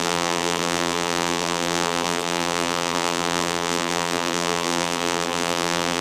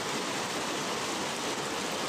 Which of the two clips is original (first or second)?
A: second